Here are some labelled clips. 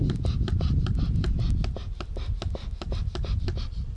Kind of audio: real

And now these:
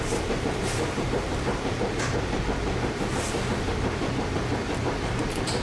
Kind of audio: fake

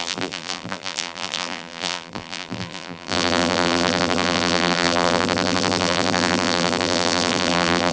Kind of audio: fake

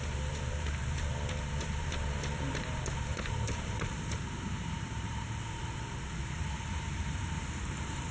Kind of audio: fake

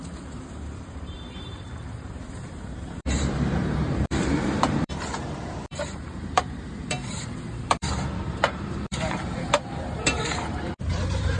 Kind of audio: fake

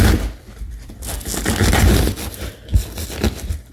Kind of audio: real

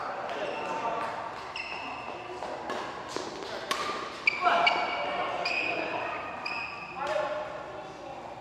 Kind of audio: real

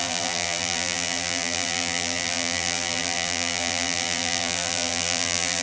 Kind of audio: fake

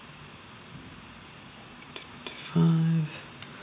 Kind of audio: real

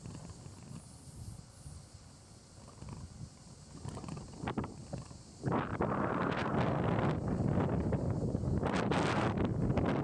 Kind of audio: real